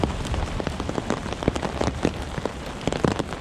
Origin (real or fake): fake